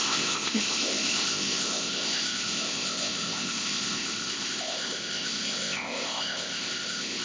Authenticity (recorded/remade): remade